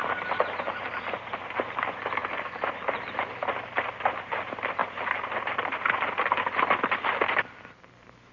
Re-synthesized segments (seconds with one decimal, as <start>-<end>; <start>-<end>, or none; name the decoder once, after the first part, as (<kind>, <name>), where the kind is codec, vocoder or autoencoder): none